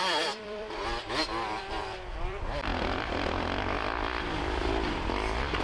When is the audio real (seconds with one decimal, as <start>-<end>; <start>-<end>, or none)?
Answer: 2.7-4.2